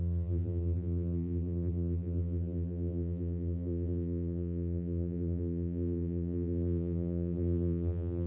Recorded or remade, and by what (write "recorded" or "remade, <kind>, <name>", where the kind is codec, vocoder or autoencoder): remade, vocoder, BigVGAN v2